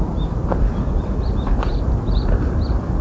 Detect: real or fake fake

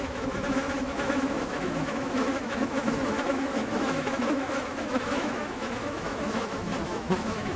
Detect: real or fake fake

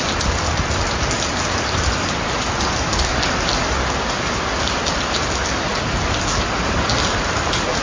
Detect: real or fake real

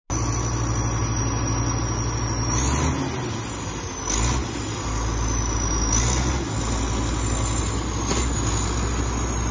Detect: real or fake real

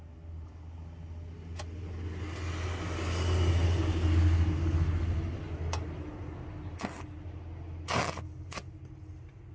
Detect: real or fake real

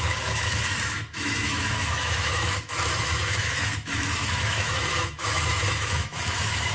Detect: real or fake fake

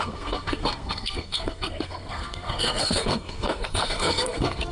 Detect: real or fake fake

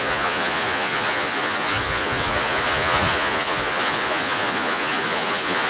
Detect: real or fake fake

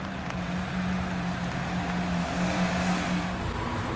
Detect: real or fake real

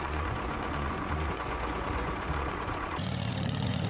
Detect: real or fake fake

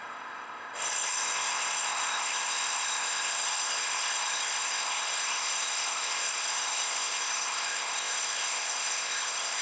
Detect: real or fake fake